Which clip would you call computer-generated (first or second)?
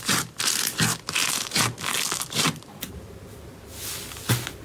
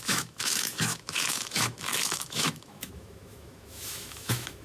second